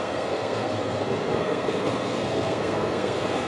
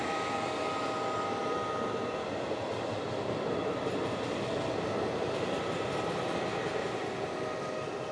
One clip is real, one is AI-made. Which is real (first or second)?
second